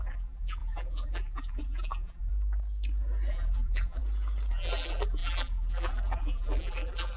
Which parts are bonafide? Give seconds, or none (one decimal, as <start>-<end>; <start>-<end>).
2.3-3.3; 4.0-4.5